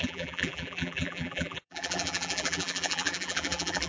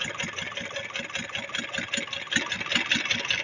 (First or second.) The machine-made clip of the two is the first